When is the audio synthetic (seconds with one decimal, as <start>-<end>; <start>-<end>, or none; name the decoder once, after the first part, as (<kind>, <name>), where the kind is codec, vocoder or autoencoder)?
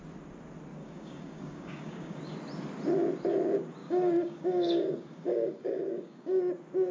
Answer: 0.8-2.2 (codec, DAC); 3.8-6.4